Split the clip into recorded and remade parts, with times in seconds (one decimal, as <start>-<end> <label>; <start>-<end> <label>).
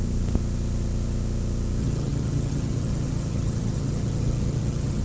0.0-1.8 recorded; 1.8-5.0 remade